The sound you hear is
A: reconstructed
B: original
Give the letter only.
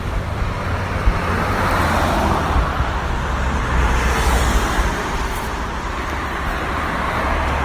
A